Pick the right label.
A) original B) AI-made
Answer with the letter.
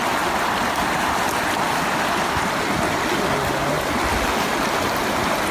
A